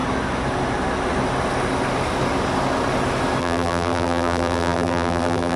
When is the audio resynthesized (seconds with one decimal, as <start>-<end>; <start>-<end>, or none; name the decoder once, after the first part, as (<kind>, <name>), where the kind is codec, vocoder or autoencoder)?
3.4-5.6 (vocoder, BigVGAN v2)